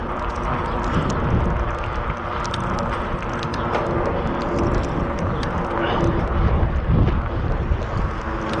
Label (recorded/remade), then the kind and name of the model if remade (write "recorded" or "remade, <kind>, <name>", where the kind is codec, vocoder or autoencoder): recorded